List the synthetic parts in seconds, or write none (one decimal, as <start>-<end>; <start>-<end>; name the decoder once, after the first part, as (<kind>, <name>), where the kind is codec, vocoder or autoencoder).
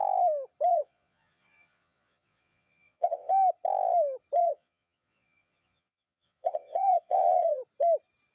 0.7-3.3 (vocoder, Vocos); 4.4-7.6